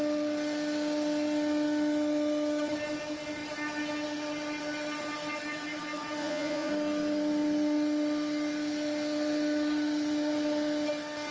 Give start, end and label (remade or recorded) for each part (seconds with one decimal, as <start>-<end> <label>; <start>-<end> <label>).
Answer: 0.0-6.2 recorded; 6.2-6.7 remade; 6.7-11.3 recorded